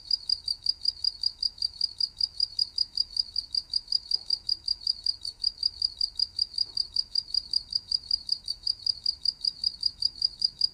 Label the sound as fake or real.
fake